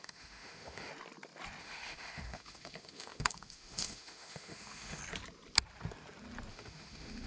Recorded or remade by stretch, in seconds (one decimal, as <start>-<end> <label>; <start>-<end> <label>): 0.0-0.9 remade; 0.9-1.6 recorded; 1.6-5.0 remade; 5.0-6.5 recorded; 6.5-7.3 remade